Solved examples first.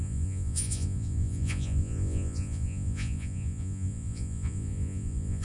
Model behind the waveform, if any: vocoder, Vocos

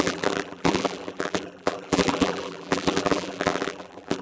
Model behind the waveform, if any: vocoder, BigVGAN v2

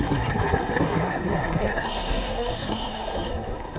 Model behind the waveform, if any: codec, SNAC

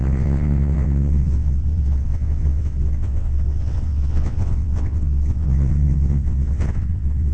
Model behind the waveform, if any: vocoder, WaveNeXt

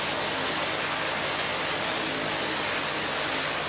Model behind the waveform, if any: none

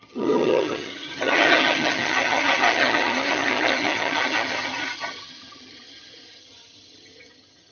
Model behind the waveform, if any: vocoder, HiFi-GAN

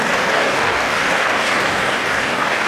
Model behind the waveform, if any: codec, DAC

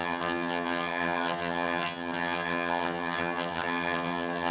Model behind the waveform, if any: vocoder, HiFi-GAN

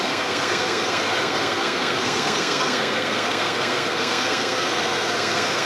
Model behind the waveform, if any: codec, SNAC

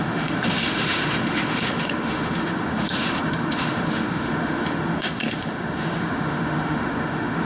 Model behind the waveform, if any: autoencoder, DAC-VAE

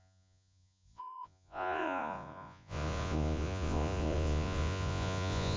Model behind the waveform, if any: vocoder, Vocos